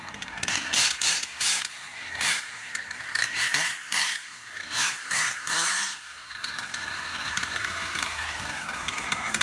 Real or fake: fake